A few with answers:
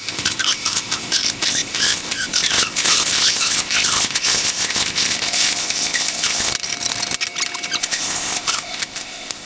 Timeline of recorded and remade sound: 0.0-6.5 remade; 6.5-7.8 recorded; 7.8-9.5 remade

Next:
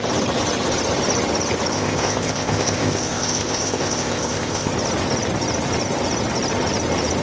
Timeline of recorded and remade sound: 0.0-1.7 recorded; 1.7-4.7 remade; 4.7-7.2 recorded

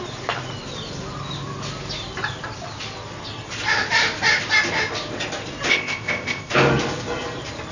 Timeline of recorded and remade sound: 0.0-5.7 recorded; 5.7-6.5 remade; 6.5-7.7 recorded

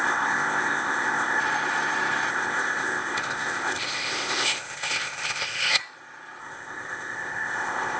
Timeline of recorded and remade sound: 0.0-1.4 remade; 1.4-2.3 recorded; 2.3-5.8 remade; 5.8-6.4 recorded; 6.4-8.0 remade